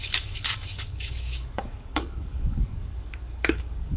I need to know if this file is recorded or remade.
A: remade